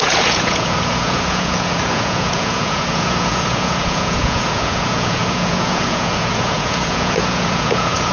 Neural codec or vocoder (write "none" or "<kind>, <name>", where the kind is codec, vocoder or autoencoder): vocoder, Vocos